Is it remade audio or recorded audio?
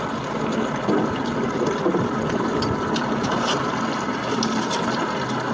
recorded